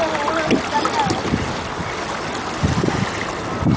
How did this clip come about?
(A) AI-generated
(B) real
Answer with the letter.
B